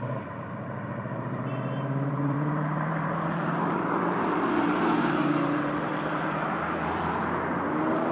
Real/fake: fake